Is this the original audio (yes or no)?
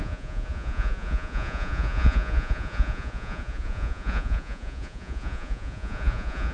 no